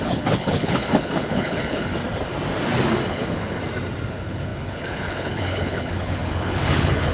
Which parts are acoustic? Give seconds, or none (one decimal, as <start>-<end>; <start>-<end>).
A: 1.9-3.1; 3.6-4.1